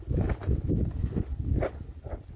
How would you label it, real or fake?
real